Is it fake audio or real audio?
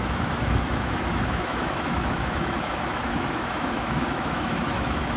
fake